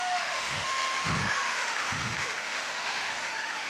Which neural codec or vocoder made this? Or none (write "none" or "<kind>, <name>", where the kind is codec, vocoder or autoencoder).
autoencoder, DAC-VAE